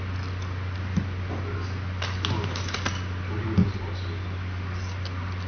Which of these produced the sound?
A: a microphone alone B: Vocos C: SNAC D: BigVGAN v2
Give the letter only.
A